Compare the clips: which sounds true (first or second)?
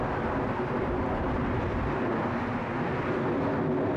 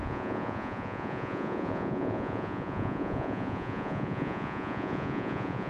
first